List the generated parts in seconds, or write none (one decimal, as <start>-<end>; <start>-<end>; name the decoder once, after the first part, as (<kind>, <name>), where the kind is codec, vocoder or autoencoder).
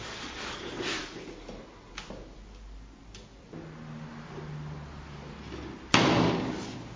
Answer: none